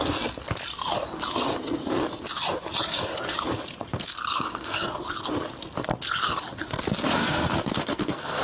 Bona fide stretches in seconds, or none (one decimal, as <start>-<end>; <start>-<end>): 0.0-3.9; 4.8-7.2